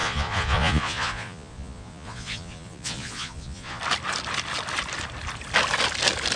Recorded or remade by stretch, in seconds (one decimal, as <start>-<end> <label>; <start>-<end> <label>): 0.0-3.8 remade; 3.8-6.4 recorded